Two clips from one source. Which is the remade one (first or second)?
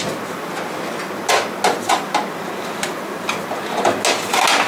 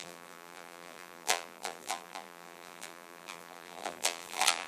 second